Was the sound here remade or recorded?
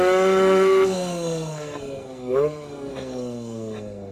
remade